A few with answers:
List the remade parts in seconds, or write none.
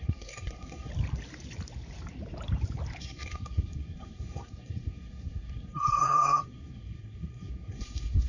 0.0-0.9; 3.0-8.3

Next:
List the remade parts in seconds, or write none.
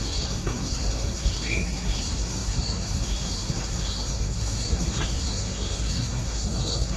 0.0-7.0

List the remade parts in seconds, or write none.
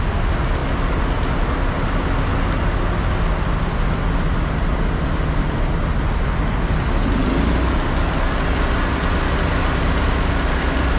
none